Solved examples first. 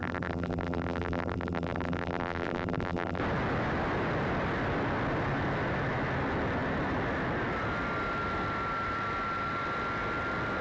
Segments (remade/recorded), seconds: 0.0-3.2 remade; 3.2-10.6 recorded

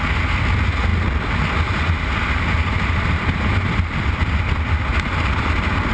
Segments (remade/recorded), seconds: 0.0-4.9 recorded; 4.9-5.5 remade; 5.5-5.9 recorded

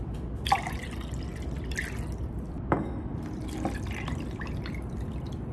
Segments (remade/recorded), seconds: 0.0-5.5 recorded

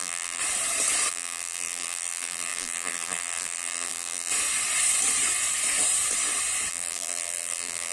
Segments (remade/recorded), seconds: 0.0-0.4 remade; 0.4-1.1 recorded; 1.1-4.3 remade; 4.3-6.7 recorded; 6.7-7.9 remade

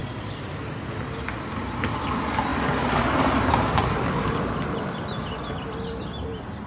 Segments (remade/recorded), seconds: 0.0-0.8 remade; 0.8-6.7 recorded

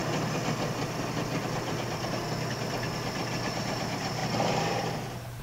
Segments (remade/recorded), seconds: 0.0-3.2 recorded; 3.2-5.4 remade